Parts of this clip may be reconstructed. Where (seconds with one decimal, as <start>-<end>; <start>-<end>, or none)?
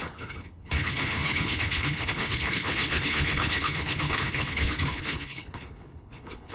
0.0-6.5